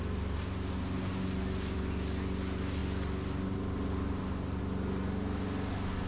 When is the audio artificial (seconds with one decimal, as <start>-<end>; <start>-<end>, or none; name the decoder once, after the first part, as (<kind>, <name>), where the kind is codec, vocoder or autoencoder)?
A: none